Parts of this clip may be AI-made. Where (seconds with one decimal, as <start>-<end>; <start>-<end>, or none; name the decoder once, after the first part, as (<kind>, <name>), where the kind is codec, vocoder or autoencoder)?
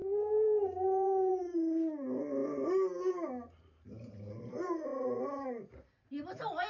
0.0-1.3 (vocoder, BigVGAN v2)